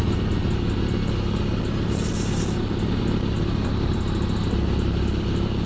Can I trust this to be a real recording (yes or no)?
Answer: yes